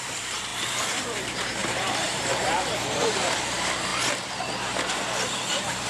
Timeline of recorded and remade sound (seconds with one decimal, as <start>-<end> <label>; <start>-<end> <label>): 0.0-3.9 remade; 3.9-5.9 recorded

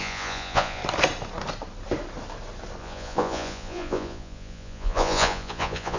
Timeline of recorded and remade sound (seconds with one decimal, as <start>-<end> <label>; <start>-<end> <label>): 0.0-0.8 remade; 0.8-2.8 recorded; 2.8-6.0 remade